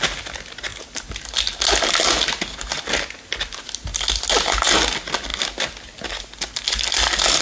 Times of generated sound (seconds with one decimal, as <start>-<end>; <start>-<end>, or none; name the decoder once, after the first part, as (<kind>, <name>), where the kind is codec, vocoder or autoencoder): none